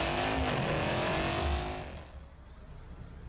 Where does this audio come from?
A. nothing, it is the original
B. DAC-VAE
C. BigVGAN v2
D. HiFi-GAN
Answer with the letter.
A